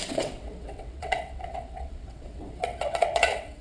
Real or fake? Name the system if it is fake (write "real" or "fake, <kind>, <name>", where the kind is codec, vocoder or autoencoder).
fake, vocoder, WaveNeXt